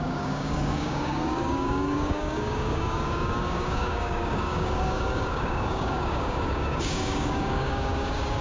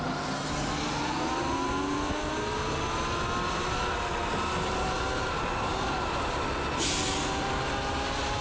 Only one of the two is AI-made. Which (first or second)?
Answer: first